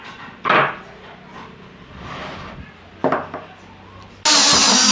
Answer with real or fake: real